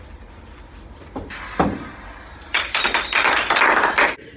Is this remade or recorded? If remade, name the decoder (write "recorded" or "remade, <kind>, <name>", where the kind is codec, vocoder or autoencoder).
recorded